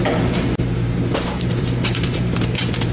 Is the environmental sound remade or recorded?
remade